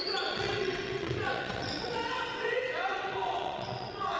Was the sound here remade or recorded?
remade